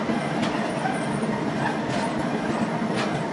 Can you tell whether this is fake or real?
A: real